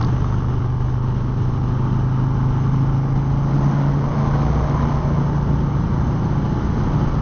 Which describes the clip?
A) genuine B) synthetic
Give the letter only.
A